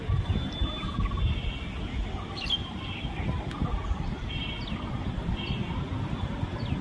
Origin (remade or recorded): recorded